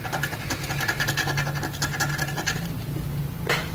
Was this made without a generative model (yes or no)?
yes